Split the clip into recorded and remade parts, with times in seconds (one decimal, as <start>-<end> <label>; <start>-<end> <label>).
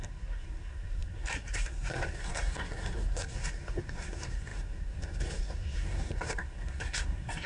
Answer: 0.0-7.5 remade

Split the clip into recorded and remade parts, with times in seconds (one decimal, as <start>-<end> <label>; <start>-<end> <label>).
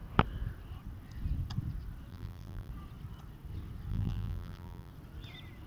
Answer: 0.0-2.1 recorded; 2.1-2.7 remade; 2.7-3.9 recorded; 3.9-4.9 remade; 4.9-5.7 recorded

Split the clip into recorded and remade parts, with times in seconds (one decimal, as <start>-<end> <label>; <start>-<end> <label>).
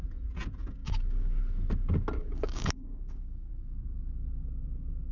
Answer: 0.0-0.8 recorded; 0.8-1.4 remade; 1.4-2.2 recorded; 2.2-3.5 remade; 3.5-5.1 recorded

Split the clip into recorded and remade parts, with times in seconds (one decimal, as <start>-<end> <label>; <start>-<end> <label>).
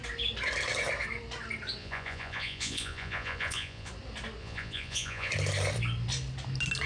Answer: 0.0-1.8 recorded; 1.8-3.9 remade; 3.9-4.4 recorded; 4.4-5.3 remade; 5.3-6.9 recorded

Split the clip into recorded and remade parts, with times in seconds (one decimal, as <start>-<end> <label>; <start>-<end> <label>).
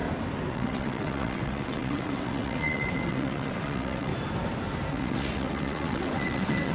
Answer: 0.0-0.5 recorded; 0.5-4.1 remade; 4.1-4.9 recorded; 4.9-6.7 remade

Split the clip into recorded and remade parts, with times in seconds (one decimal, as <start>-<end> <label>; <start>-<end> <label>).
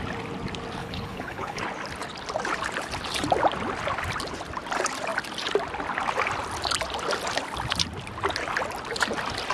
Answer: 0.0-0.8 recorded; 0.8-1.6 remade; 1.6-9.5 recorded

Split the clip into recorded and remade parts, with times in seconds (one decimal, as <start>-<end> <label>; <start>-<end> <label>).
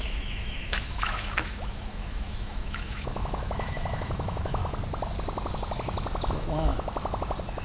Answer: 0.0-4.6 remade; 4.6-6.3 recorded; 6.3-6.7 remade; 6.7-7.6 recorded